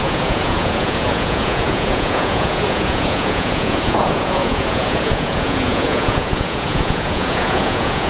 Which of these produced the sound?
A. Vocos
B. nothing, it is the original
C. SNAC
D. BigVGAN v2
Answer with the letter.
A